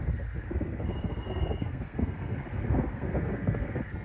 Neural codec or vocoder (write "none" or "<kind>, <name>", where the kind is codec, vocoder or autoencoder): codec, SNAC